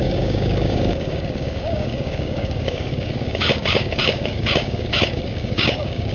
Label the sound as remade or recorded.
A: remade